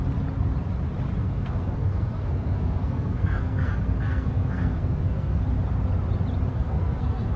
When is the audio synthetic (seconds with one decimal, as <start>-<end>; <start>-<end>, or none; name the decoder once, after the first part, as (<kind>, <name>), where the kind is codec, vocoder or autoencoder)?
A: 1.2-5.4 (codec, SNAC); 6.5-7.4